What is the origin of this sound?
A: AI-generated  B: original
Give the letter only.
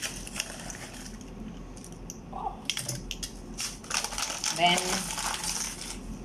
B